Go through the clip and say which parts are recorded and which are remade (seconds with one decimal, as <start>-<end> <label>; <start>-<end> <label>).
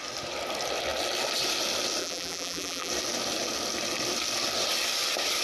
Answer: 0.0-2.0 recorded; 2.0-2.9 remade; 2.9-5.4 recorded